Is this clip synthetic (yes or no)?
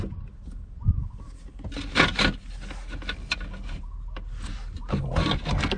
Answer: no